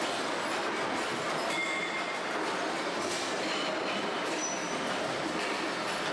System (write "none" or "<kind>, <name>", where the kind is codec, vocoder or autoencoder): none